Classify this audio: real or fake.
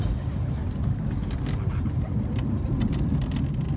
real